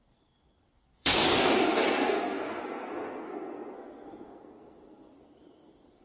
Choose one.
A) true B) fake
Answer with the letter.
B